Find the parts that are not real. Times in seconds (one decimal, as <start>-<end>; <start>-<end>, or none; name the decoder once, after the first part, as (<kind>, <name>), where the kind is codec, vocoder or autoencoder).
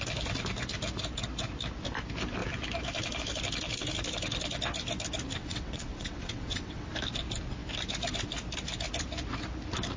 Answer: 5.4-6.9 (vocoder, WaveNeXt)